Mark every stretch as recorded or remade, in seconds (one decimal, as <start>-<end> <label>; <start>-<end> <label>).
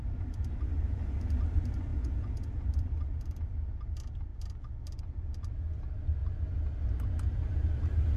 0.0-1.9 recorded; 1.9-2.5 remade; 2.5-8.2 recorded